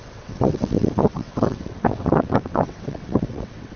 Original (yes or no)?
no